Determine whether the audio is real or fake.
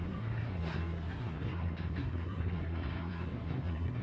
fake